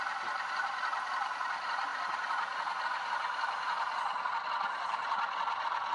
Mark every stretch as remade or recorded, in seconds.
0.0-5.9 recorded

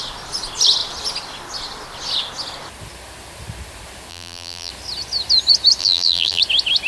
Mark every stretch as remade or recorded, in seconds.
0.0-4.1 recorded; 4.1-4.7 remade; 4.7-5.8 recorded; 5.8-6.4 remade; 6.4-6.9 recorded

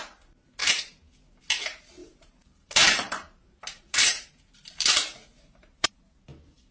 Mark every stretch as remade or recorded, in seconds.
0.0-2.0 recorded; 2.0-6.0 remade; 6.0-6.7 recorded

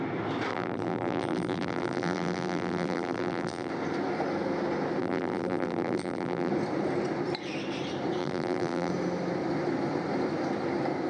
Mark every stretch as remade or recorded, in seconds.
0.0-0.5 recorded; 0.5-3.7 remade; 3.7-5.0 recorded; 5.0-6.5 remade; 6.5-8.2 recorded; 8.2-8.9 remade; 8.9-11.1 recorded

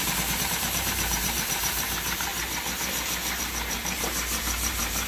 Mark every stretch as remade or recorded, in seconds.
0.0-2.3 remade; 2.3-3.4 recorded; 3.4-5.1 remade

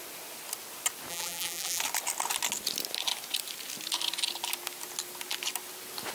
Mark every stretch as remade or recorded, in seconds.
0.0-1.1 recorded; 1.1-1.8 remade; 1.8-6.1 recorded

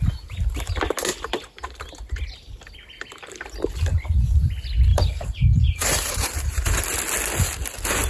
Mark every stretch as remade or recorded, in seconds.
0.0-4.9 recorded; 4.9-6.8 remade; 6.8-8.1 recorded